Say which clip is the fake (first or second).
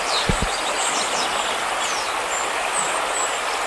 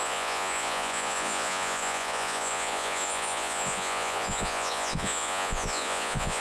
second